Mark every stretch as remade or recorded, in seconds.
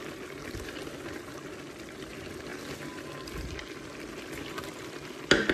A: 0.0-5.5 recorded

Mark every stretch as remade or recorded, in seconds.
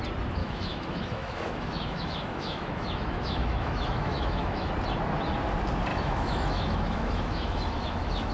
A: 0.0-0.4 recorded; 0.4-4.7 remade; 4.7-5.9 recorded; 5.9-8.3 remade